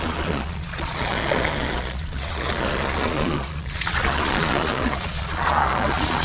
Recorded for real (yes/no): no